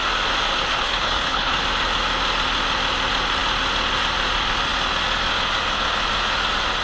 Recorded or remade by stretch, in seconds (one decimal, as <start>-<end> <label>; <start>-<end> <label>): 0.0-0.5 recorded; 0.5-1.6 remade; 1.6-6.8 recorded